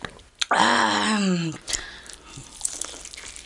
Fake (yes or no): no